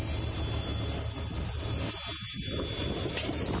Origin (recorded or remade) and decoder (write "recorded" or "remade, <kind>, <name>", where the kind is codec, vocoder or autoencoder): recorded